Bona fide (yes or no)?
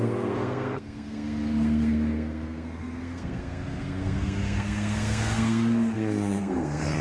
no